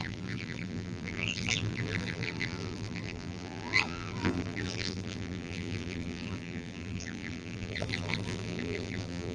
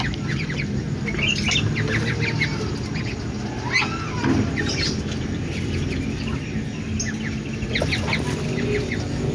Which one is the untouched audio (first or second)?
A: second